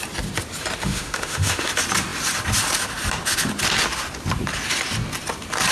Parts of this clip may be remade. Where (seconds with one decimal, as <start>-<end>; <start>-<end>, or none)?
0.8-1.7

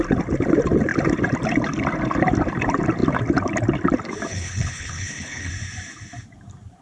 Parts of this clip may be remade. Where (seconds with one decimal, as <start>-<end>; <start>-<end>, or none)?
4.3-5.5

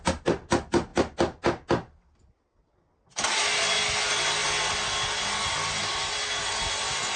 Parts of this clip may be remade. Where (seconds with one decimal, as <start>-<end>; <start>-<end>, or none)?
none

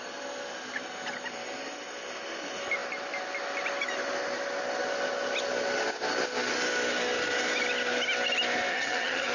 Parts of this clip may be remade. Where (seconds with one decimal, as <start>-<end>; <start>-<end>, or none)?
8.7-9.3

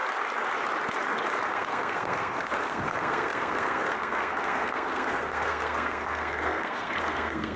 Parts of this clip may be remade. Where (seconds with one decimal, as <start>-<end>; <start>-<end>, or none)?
1.5-7.6